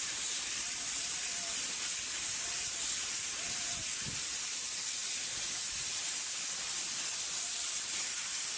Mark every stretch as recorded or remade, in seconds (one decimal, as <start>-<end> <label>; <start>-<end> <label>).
0.0-5.0 remade; 5.0-7.2 recorded; 7.2-8.6 remade